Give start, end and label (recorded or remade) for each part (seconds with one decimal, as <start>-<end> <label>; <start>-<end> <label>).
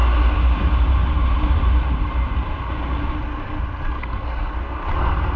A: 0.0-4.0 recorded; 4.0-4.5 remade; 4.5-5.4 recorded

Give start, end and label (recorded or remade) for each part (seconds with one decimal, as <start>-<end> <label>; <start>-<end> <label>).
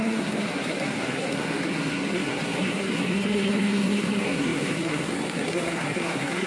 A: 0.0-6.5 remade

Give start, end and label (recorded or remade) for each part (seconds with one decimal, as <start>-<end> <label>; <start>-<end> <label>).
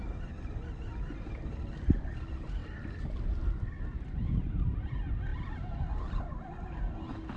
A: 0.0-7.4 recorded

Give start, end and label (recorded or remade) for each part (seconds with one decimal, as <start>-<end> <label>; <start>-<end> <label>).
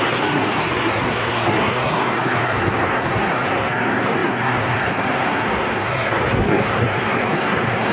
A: 0.0-7.9 remade